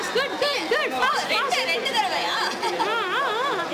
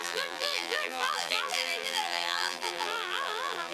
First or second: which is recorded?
first